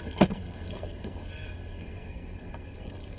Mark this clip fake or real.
fake